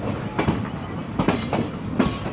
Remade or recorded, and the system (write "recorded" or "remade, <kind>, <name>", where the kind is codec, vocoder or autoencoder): recorded